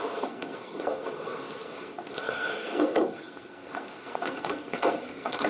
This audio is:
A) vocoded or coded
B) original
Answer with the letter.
A